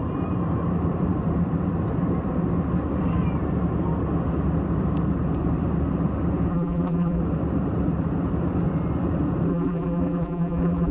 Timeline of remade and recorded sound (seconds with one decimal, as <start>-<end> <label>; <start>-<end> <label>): 0.0-6.5 recorded; 6.5-7.2 remade; 7.2-9.5 recorded; 9.5-10.9 remade